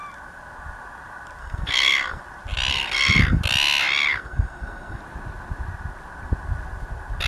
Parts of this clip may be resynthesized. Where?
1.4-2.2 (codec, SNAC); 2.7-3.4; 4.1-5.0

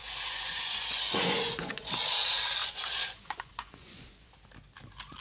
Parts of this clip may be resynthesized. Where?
0.0-1.9 (vocoder, Vocos); 2.6-4.3